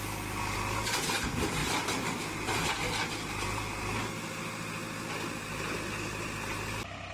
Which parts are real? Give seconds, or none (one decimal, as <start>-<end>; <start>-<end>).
0.0-1.6; 2.2-7.1

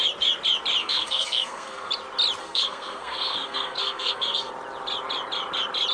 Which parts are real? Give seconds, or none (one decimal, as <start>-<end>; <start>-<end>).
0.0-0.8; 1.9-2.4; 4.5-5.9

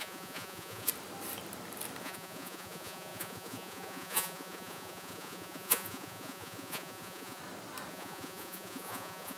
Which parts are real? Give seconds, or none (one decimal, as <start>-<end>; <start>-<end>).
0.9-2.0; 7.4-7.9

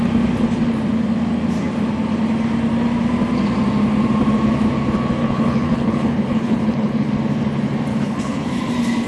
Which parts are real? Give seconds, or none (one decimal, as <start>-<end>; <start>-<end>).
0.0-5.2; 7.1-7.9; 8.6-9.1

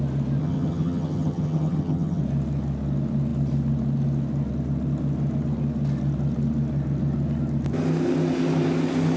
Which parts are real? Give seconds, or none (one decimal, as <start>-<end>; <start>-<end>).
0.0-0.4; 2.2-9.2

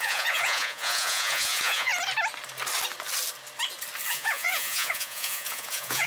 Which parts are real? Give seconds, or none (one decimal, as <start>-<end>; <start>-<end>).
1.9-4.1